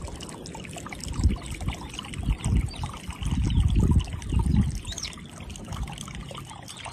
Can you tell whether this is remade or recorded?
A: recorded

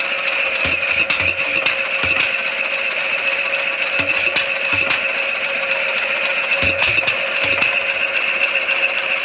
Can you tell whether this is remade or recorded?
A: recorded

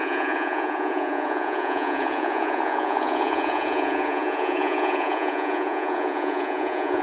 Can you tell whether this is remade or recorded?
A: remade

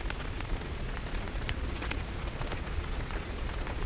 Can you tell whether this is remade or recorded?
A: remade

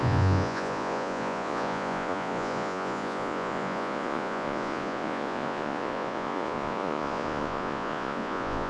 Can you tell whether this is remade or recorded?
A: remade